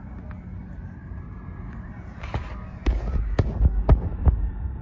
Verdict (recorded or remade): recorded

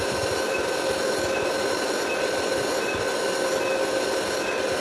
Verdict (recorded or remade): recorded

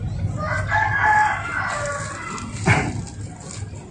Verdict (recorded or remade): recorded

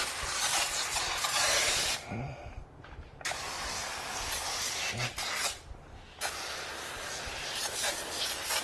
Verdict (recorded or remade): recorded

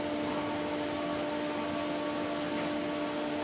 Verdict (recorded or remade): recorded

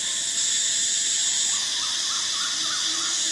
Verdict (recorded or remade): recorded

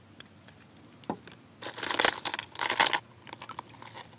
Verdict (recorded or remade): recorded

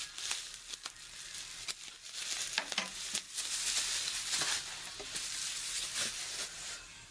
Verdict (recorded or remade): recorded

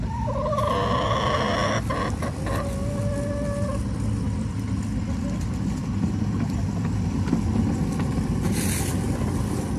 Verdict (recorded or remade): recorded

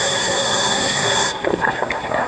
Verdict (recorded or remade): remade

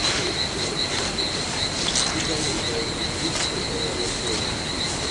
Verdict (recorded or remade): recorded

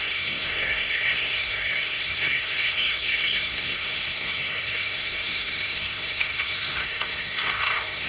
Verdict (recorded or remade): remade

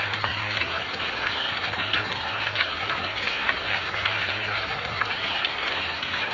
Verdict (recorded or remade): remade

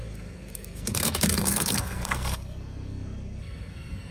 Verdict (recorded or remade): remade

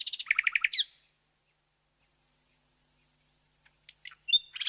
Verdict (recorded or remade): recorded